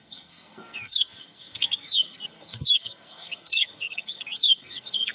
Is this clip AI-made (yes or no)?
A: yes